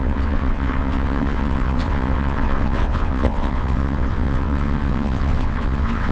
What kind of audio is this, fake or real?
fake